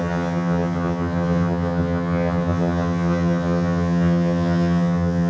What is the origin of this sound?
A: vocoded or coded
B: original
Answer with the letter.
A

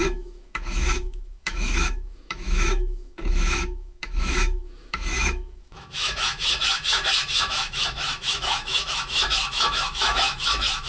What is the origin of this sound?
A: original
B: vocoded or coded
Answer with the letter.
B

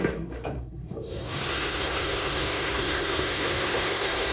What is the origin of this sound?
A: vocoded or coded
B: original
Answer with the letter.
A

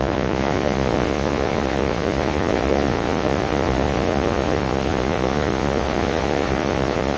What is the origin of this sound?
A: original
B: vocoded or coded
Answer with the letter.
B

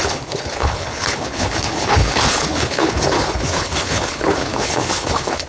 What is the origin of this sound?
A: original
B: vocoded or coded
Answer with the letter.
B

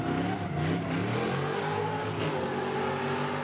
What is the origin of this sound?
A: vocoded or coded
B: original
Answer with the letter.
B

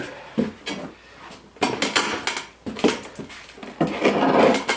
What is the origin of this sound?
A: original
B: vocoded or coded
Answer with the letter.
A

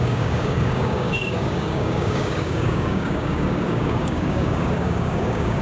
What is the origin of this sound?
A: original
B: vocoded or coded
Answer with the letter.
B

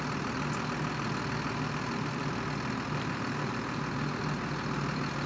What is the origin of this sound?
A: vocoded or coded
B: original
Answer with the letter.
B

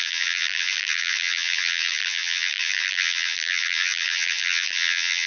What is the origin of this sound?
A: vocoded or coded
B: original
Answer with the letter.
A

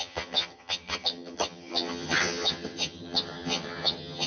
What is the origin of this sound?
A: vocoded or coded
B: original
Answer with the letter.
A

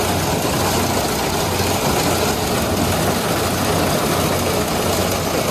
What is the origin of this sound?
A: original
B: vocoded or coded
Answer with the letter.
A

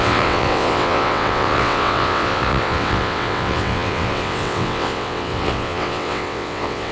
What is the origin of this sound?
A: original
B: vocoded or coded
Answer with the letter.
B